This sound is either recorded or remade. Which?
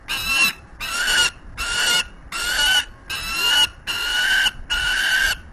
recorded